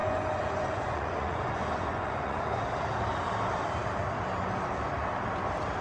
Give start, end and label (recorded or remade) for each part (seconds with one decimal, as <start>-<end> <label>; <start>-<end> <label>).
0.0-2.6 remade; 2.6-5.8 recorded